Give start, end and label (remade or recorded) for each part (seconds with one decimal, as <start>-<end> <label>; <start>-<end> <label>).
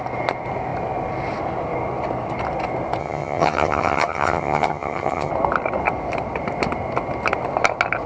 0.0-3.0 recorded; 3.0-5.3 remade; 5.3-8.1 recorded